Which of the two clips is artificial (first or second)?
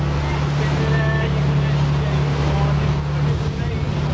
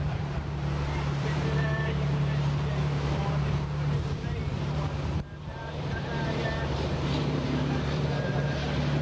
second